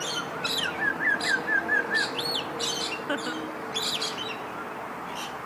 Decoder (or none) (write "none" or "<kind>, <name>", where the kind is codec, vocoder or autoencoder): none